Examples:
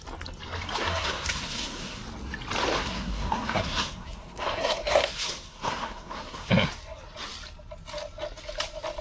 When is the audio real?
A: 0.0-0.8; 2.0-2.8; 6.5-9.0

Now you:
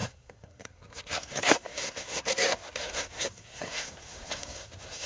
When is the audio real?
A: none

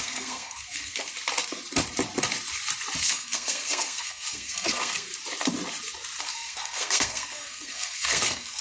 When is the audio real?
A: 1.1-3.0; 5.1-6.2

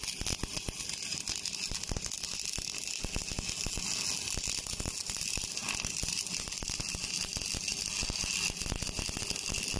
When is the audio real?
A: 0.0-9.8

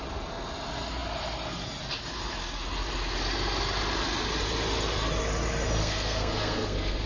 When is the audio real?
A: 0.0-5.8

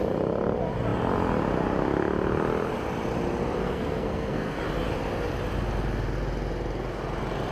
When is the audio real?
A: 0.0-3.6; 4.6-7.5

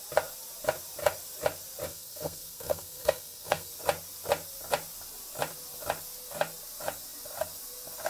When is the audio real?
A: 0.0-1.9; 3.7-8.1